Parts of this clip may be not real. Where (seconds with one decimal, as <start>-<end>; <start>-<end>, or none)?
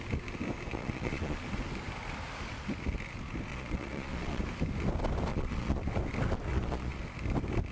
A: 0.7-1.4; 3.5-4.4; 5.3-5.8; 6.5-7.0